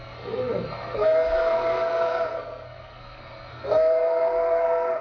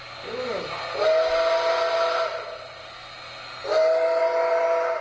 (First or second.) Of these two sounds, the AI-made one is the first